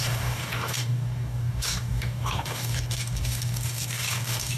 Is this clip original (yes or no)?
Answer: no